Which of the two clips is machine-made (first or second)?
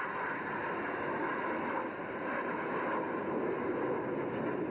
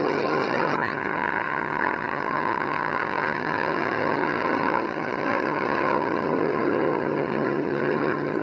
second